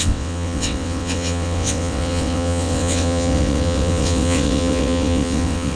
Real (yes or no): no